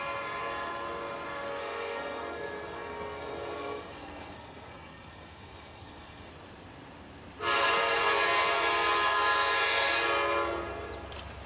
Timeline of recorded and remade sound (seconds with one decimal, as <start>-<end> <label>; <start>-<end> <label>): 0.0-1.6 recorded; 1.6-6.3 remade; 6.3-11.5 recorded